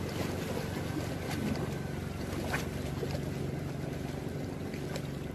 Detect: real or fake real